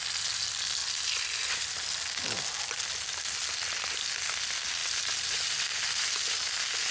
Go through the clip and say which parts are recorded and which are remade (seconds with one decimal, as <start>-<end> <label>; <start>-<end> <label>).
0.0-0.8 recorded; 0.8-1.9 remade; 1.9-4.8 recorded; 4.8-6.3 remade; 6.3-6.9 recorded